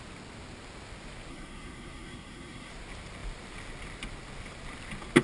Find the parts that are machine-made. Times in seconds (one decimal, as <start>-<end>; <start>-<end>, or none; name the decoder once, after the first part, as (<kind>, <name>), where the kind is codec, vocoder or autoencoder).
1.3-2.7 (codec, SNAC)